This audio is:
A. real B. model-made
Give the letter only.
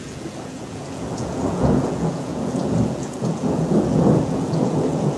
B